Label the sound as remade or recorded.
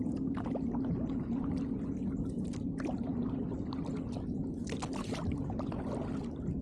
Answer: recorded